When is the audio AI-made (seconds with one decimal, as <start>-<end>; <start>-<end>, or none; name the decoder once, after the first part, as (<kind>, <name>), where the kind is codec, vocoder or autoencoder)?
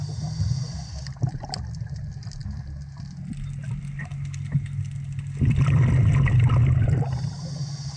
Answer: none